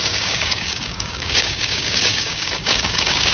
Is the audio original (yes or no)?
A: no